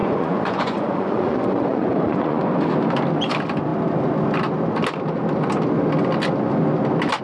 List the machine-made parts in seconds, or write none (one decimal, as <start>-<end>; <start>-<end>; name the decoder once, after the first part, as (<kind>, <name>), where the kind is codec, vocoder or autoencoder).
0.0-2.6 (vocoder, Vocos)